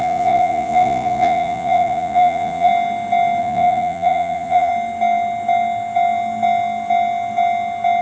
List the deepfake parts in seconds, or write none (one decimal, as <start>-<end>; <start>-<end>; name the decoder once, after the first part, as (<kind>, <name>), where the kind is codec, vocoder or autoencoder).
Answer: 0.0-2.7 (vocoder, Vocos); 3.4-4.7